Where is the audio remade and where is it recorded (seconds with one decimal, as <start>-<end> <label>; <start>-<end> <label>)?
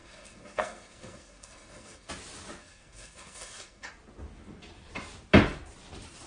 0.0-2.1 remade; 2.1-2.6 recorded; 2.6-3.9 remade; 3.9-6.3 recorded